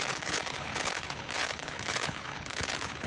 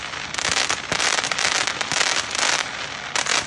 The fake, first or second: first